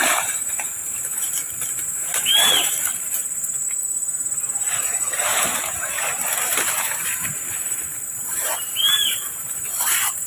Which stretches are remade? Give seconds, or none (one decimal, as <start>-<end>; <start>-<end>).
0.0-3.2; 4.9-10.3